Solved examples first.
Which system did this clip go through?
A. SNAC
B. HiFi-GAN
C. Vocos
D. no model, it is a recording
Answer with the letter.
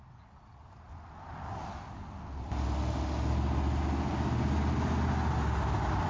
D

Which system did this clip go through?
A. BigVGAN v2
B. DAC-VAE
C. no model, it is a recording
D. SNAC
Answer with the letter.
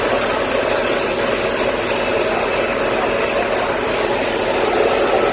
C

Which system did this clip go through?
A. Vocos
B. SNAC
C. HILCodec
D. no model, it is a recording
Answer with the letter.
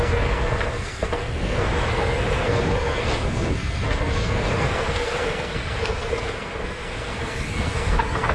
B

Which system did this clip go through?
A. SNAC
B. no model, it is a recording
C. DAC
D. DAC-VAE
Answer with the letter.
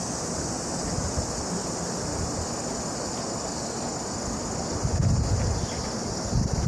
B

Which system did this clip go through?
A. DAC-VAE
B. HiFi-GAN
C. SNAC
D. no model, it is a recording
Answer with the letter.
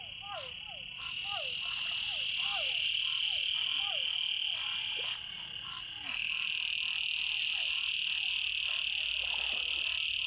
D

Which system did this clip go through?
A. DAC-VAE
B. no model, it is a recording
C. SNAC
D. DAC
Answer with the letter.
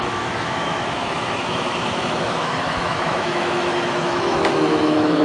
A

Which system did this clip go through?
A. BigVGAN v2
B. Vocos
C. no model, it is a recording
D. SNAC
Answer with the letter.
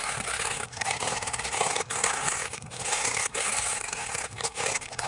D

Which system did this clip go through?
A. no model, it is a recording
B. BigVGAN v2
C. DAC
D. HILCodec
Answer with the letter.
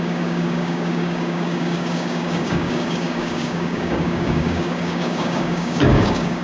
C